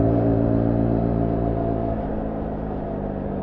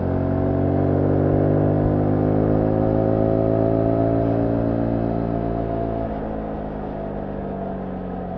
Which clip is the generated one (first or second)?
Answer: first